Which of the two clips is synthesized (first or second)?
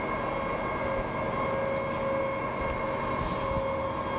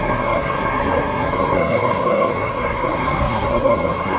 second